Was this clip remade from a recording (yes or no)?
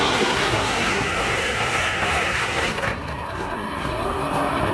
yes